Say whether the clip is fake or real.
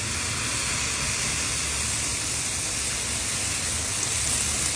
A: real